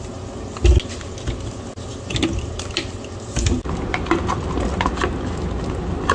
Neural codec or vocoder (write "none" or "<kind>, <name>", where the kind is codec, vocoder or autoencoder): none